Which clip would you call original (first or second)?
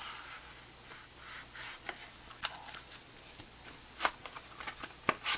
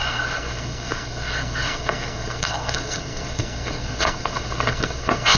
first